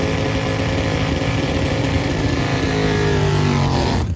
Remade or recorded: recorded